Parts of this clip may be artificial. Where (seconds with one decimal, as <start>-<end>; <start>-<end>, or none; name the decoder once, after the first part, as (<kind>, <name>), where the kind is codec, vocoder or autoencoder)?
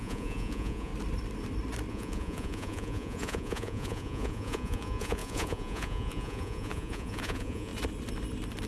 0.0-0.9 (vocoder, Vocos); 1.9-7.7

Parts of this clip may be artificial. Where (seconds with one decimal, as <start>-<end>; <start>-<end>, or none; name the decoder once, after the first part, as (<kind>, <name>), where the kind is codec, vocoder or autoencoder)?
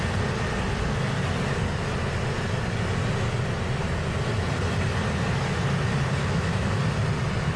6.2-6.8 (autoencoder, DAC-VAE)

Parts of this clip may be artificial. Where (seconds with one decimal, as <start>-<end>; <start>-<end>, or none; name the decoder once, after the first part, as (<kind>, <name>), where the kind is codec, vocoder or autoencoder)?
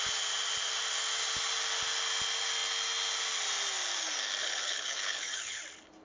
4.4-5.6 (codec, HILCodec)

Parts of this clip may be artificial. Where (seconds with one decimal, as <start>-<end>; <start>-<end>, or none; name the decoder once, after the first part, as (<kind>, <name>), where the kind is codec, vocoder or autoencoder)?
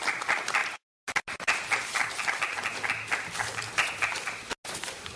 none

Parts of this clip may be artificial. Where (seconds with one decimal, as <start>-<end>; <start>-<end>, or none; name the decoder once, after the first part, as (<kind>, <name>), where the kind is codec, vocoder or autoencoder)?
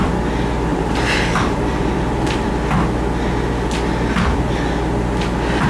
0.7-2.5 (vocoder, BigVGAN v2)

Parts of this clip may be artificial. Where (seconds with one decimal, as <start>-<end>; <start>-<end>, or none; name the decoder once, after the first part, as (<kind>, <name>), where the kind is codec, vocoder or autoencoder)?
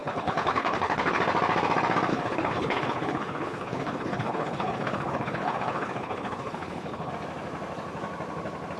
0.0-1.2 (codec, HILCodec); 2.1-7.1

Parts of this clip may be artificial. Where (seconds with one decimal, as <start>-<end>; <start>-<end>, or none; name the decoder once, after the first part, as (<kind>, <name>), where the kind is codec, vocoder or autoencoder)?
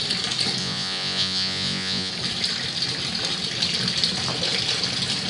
0.6-2.1 (vocoder, Vocos)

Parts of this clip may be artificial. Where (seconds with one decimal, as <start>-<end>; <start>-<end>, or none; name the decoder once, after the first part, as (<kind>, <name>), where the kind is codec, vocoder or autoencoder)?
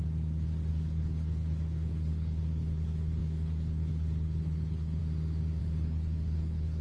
0.7-5.0 (codec, HILCodec); 5.6-6.8